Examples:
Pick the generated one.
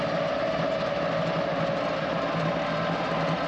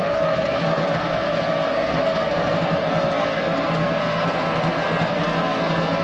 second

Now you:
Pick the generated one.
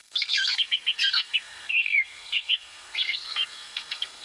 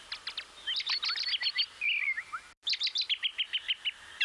first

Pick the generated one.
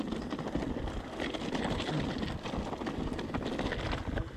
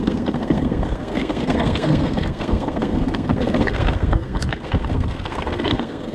second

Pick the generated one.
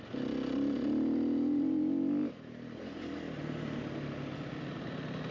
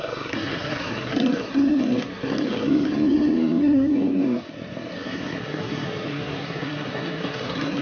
second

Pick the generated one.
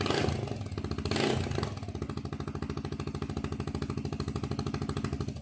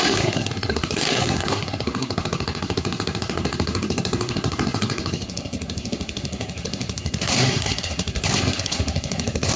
second